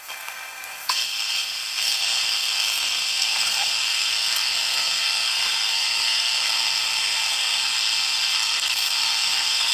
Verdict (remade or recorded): remade